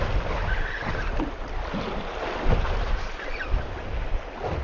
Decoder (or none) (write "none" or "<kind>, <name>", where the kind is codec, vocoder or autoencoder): none